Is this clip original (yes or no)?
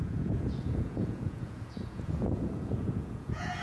no